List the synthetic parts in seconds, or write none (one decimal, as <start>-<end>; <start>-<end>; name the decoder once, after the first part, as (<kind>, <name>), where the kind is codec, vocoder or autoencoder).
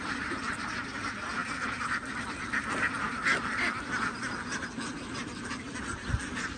none